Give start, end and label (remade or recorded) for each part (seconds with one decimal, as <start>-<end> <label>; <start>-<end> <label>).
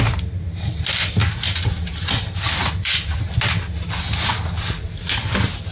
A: 0.0-5.7 recorded